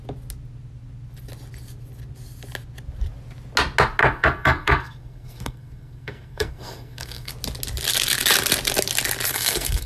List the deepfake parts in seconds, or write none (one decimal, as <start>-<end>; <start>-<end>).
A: 4.0-7.3; 9.3-9.9